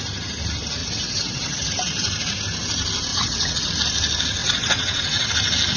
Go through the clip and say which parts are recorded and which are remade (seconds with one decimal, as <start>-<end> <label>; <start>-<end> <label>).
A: 0.0-0.8 recorded; 0.8-1.7 remade; 1.7-3.1 recorded; 3.1-3.7 remade; 3.7-4.4 recorded; 4.4-5.3 remade; 5.3-5.8 recorded